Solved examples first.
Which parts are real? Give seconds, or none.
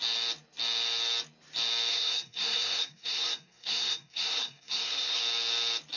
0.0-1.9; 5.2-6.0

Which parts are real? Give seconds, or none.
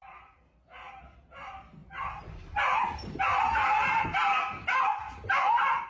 none